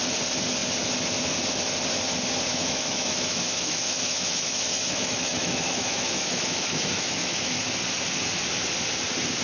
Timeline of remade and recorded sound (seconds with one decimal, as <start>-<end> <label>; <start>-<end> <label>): 0.0-2.5 recorded; 2.5-7.7 remade; 7.7-9.4 recorded